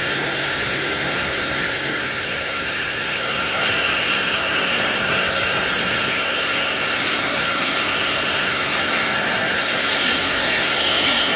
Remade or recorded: remade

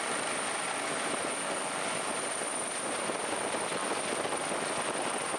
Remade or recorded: recorded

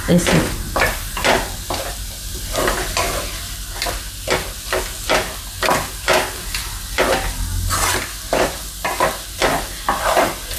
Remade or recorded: recorded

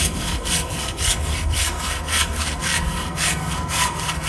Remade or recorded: remade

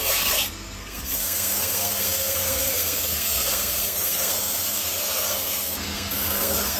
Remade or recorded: remade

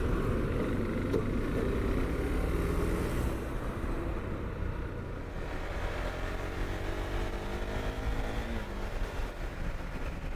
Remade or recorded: recorded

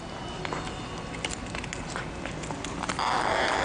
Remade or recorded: recorded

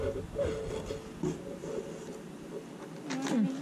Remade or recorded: recorded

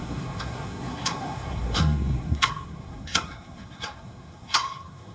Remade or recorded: remade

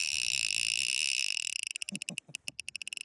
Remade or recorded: recorded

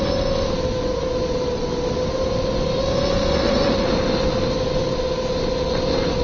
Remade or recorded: recorded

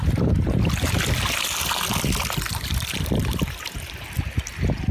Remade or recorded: recorded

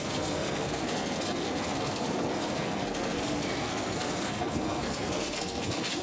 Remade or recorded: remade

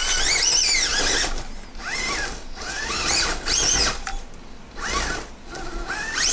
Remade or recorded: recorded